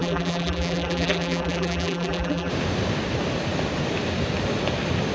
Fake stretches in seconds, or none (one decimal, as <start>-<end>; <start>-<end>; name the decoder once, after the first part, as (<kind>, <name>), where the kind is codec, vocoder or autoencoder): 0.0-2.5 (vocoder, BigVGAN v2)